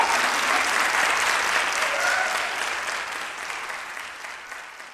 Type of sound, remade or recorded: recorded